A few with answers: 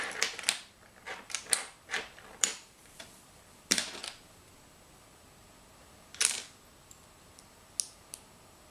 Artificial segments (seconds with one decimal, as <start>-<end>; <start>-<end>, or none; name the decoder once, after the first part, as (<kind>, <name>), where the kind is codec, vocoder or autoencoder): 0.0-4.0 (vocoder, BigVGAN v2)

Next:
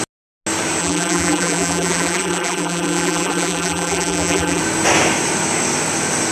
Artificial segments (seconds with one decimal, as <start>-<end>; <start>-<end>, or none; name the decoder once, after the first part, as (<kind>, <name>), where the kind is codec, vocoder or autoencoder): 0.8-4.6 (vocoder, BigVGAN v2)

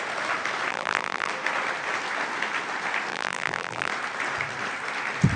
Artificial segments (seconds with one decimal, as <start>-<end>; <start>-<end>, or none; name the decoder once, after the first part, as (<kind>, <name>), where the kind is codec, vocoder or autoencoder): 0.7-1.3 (vocoder, BigVGAN v2); 3.1-3.9

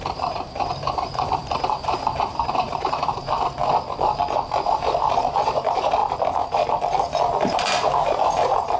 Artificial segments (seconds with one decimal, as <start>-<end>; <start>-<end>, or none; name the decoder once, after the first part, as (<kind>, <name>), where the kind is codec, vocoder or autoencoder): 0.0-3.6 (vocoder, BigVGAN v2); 4.2-6.0; 6.8-8.8